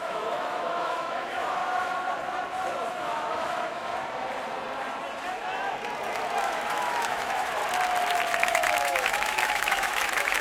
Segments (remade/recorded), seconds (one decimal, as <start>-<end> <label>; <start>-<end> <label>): 0.0-1.6 remade; 1.6-2.9 recorded; 2.9-3.9 remade; 3.9-6.4 recorded; 6.4-7.6 remade; 7.6-8.4 recorded; 8.4-10.4 remade